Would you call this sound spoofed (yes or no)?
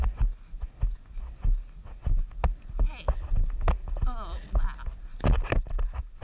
no